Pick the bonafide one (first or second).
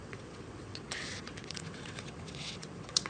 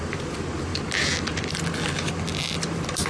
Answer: second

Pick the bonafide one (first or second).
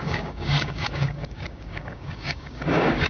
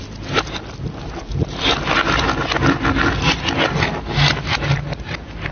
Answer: second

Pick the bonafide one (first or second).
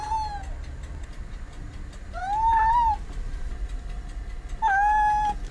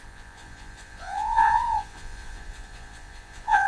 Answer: first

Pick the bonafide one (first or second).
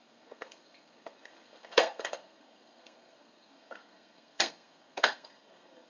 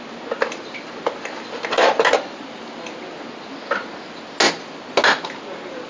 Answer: second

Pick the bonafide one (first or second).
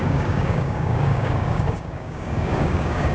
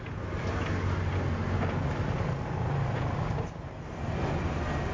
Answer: second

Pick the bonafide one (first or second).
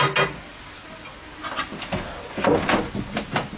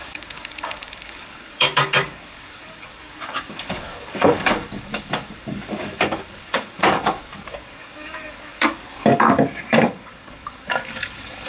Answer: first